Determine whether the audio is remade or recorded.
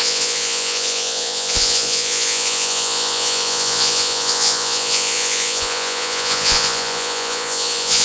remade